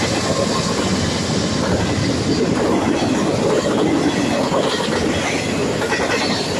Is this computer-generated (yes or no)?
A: no